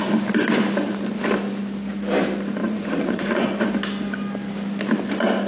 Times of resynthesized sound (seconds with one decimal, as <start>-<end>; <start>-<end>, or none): 2.6-3.4